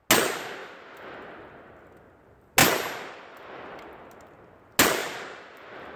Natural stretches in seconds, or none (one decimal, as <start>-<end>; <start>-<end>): 0.0-5.0